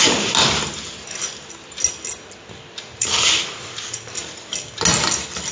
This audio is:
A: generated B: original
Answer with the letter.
B